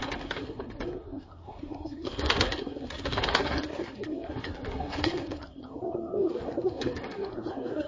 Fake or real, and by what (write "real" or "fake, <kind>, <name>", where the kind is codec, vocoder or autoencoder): fake, codec, SNAC